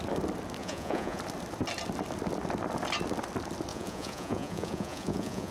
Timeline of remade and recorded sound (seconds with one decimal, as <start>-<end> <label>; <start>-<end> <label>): 0.0-0.6 recorded; 0.6-1.2 remade; 1.2-3.7 recorded; 3.7-5.5 remade